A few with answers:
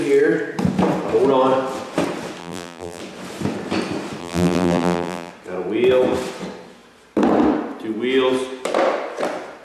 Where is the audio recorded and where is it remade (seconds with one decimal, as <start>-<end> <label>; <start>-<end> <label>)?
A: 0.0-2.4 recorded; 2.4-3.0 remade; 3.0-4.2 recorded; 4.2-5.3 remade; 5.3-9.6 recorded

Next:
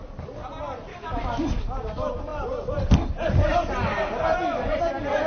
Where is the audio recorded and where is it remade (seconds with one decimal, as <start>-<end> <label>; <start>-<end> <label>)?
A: 0.0-0.9 recorded; 0.9-1.4 remade; 1.4-5.3 recorded

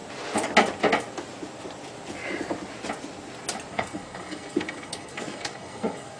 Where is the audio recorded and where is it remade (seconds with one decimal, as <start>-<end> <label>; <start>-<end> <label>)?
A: 0.0-3.7 recorded; 3.7-6.2 remade